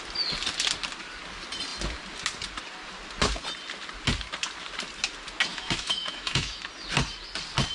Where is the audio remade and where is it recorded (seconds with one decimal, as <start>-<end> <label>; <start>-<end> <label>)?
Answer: 0.0-5.5 recorded; 5.5-6.6 remade; 6.6-7.7 recorded